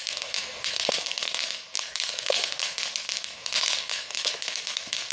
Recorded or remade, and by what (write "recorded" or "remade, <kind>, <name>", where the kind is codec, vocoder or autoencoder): remade, codec, SNAC